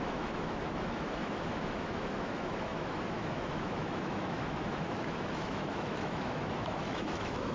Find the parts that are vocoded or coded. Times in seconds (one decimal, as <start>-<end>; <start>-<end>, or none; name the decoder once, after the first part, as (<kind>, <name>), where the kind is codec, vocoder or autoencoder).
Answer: 0.0-7.5 (autoencoder, DAC-VAE)